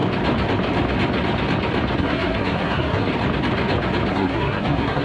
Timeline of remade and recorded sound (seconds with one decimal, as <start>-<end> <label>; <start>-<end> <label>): 0.0-2.0 recorded; 2.0-3.1 remade; 3.1-4.1 recorded; 4.1-5.0 remade